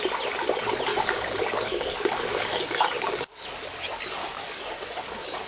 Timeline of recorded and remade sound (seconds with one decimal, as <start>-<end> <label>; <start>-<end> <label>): 0.0-0.9 recorded; 0.9-3.7 remade; 3.7-4.2 recorded; 4.2-5.5 remade